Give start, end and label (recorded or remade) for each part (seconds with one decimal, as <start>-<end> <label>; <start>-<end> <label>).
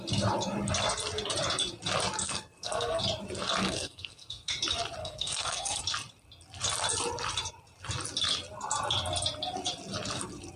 0.0-2.2 recorded; 2.2-3.0 remade; 3.0-3.6 recorded; 3.6-4.5 remade; 4.5-5.0 recorded; 5.0-5.8 remade; 5.8-10.6 recorded